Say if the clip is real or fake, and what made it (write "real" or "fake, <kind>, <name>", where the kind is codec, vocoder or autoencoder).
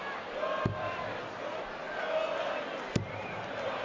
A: real